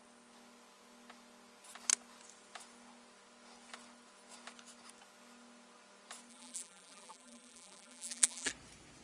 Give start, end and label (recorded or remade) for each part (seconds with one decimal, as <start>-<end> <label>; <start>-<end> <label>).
0.0-6.3 recorded; 6.3-8.5 remade; 8.5-9.0 recorded